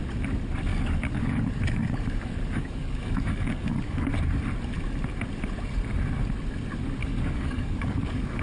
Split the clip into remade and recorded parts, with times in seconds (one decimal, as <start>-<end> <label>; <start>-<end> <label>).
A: 0.0-0.7 recorded; 0.7-4.1 remade; 4.1-7.0 recorded; 7.0-8.4 remade